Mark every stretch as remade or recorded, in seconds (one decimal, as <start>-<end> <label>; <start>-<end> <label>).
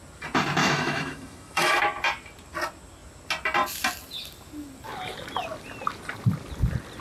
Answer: 0.0-0.6 recorded; 0.6-1.8 remade; 1.8-7.0 recorded